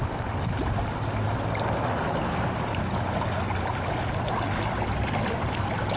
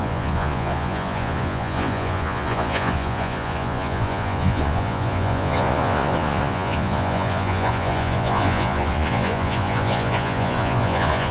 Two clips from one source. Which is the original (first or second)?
first